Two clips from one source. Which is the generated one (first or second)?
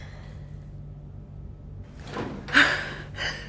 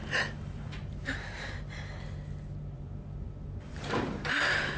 second